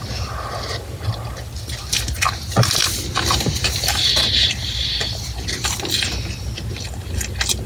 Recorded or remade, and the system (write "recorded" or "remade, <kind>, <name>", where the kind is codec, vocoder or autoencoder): recorded